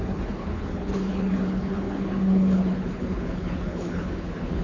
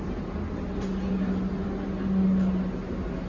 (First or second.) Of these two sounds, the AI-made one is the first